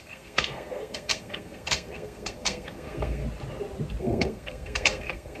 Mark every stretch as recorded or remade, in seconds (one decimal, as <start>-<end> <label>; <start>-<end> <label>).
0.0-3.2 remade; 3.2-4.0 recorded; 4.0-5.4 remade